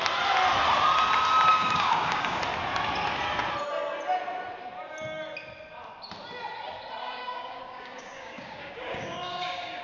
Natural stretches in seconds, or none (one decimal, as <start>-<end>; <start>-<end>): 0.0-1.5; 2.4-7.0